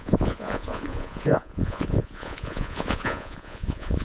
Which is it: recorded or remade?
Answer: remade